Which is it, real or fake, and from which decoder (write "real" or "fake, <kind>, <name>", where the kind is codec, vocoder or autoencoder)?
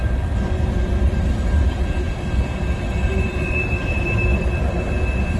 fake, vocoder, BigVGAN v2